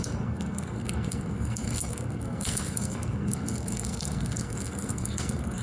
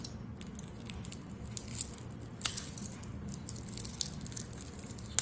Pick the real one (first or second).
second